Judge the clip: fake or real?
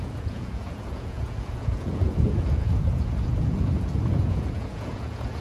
fake